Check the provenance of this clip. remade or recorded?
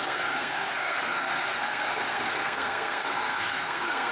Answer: remade